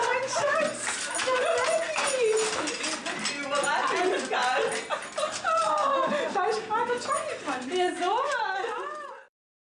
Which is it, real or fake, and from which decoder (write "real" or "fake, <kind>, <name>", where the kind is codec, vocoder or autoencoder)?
real